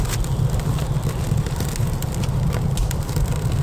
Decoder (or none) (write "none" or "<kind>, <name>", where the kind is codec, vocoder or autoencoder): none